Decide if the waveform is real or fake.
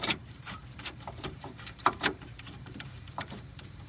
fake